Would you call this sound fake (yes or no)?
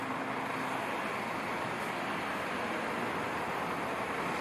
no